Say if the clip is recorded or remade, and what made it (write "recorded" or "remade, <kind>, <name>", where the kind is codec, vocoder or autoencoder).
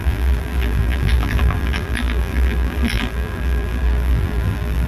remade, vocoder, BigVGAN v2